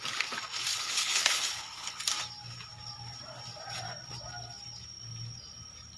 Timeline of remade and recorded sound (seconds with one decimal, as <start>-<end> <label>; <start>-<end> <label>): 0.0-0.7 recorded; 0.7-2.0 remade; 2.0-6.0 recorded